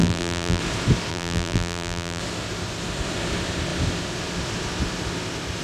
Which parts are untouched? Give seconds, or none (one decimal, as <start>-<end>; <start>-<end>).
0.6-1.1; 2.2-5.6